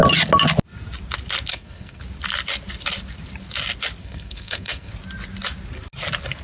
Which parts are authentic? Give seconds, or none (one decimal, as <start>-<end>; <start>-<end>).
0.0-1.5; 2.0-4.0; 4.9-6.4